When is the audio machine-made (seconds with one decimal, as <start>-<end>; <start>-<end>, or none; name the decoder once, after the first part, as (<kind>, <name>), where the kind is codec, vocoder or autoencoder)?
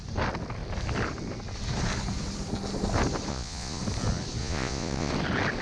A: 3.3-3.8 (vocoder, Vocos); 4.4-5.1